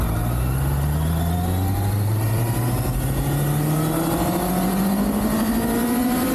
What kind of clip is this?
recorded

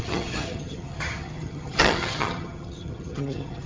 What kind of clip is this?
remade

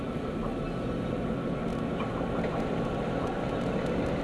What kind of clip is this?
recorded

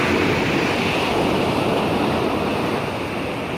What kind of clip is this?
recorded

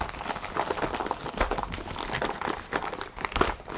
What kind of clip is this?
recorded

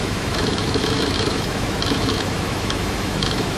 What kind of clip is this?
remade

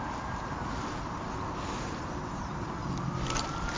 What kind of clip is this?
recorded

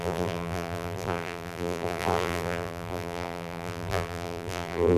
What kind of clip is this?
remade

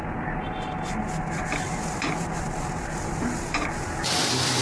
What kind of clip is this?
recorded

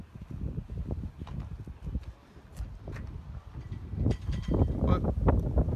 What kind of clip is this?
recorded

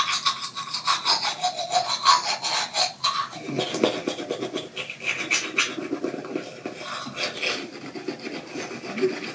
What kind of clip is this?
recorded